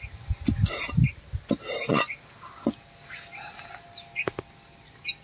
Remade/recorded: recorded